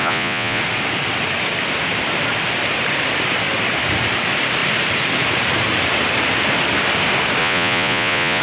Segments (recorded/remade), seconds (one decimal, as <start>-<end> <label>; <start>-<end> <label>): 0.0-0.6 remade; 0.6-7.4 recorded; 7.4-8.4 remade